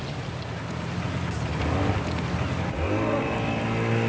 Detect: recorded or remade recorded